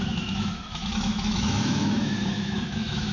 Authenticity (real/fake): fake